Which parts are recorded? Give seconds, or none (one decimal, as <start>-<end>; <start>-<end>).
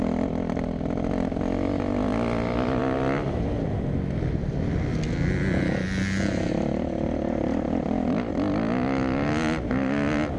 0.0-10.4